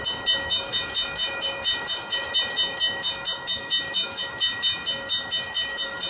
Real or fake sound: fake